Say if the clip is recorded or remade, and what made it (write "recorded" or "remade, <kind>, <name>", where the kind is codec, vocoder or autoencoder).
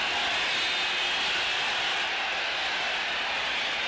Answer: recorded